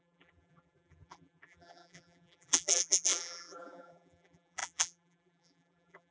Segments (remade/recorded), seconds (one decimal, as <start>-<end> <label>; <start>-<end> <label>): 0.0-6.1 remade